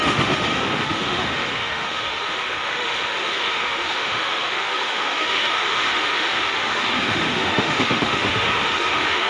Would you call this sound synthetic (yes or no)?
yes